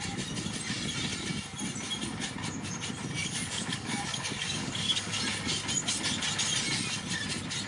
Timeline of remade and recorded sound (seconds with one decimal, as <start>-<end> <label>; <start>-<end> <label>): 0.0-3.2 recorded; 3.2-5.2 remade; 5.2-7.7 recorded